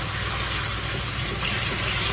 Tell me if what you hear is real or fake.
real